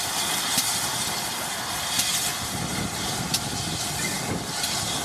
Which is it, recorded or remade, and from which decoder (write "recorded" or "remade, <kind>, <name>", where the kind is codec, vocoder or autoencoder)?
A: recorded